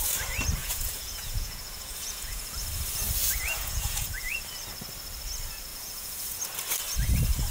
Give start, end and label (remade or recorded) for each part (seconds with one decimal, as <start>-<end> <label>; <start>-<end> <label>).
0.0-0.6 recorded; 0.6-2.6 remade; 2.6-3.2 recorded; 3.2-4.4 remade; 4.4-5.7 recorded; 5.7-6.4 remade; 6.4-7.5 recorded